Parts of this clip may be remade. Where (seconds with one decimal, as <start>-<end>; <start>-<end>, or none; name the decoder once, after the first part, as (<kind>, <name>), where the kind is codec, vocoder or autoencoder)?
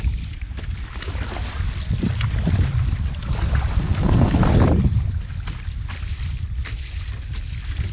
3.8-4.4 (codec, SNAC)